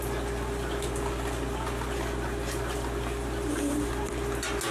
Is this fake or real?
real